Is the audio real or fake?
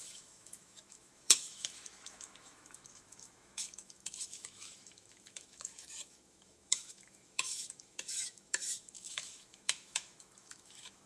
fake